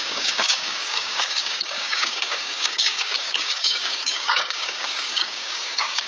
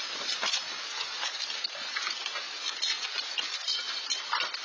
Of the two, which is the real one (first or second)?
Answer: second